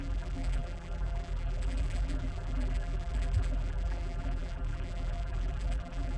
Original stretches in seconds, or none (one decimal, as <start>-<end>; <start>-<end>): none